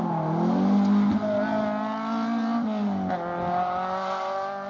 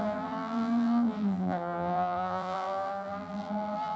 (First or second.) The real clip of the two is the first